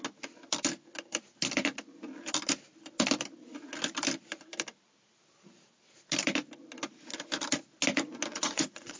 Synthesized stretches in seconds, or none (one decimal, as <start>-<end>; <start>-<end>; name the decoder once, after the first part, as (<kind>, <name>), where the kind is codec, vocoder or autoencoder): 8.3-9.0 (vocoder, Vocos)